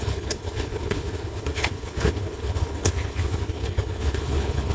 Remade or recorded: remade